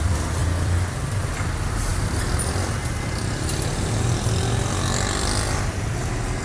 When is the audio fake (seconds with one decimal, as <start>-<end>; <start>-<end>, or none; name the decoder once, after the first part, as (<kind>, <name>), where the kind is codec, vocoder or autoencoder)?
0.4-1.4 (vocoder, BigVGAN v2)